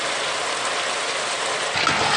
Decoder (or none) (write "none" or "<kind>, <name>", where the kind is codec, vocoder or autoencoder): none